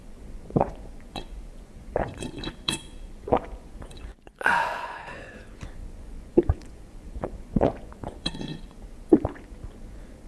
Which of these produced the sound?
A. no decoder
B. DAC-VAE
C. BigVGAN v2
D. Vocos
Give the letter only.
D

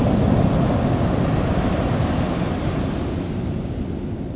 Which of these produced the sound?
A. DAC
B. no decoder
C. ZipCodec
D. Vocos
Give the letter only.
B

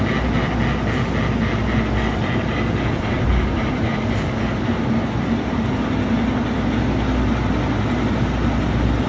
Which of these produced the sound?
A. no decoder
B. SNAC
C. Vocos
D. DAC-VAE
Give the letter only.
A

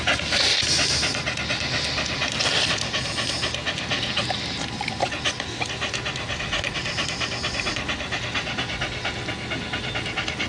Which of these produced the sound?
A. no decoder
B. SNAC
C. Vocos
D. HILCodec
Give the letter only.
A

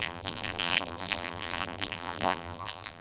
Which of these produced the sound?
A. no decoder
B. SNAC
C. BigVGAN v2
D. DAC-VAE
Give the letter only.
C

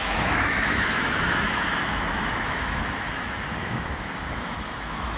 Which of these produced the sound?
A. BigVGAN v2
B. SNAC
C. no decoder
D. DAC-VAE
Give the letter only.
D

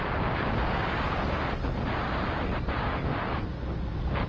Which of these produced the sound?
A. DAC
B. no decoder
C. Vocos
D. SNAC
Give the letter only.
B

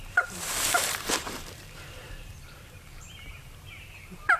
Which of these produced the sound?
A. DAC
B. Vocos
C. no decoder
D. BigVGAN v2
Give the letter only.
D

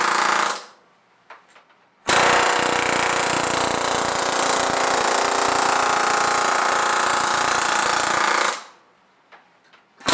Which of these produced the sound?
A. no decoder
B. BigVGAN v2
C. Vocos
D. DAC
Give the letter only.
A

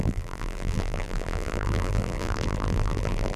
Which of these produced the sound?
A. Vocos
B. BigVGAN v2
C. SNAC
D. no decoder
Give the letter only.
B